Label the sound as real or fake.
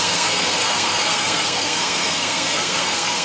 fake